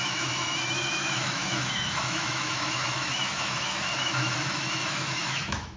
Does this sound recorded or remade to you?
remade